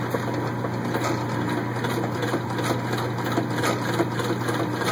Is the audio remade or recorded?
recorded